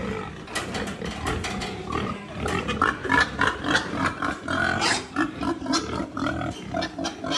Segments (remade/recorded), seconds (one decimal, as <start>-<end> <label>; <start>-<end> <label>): 0.0-4.0 recorded; 4.0-6.8 remade; 6.8-7.4 recorded